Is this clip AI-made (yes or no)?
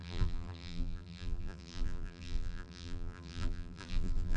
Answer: yes